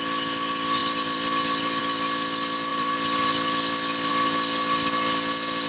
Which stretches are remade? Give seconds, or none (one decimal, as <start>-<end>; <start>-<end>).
0.8-1.8; 2.7-4.1